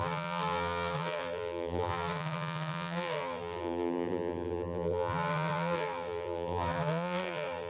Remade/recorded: remade